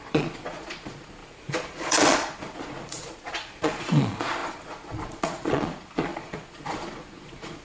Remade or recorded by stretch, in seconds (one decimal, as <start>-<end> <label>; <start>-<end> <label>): 0.0-7.6 remade